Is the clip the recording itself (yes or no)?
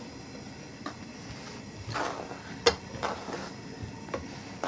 yes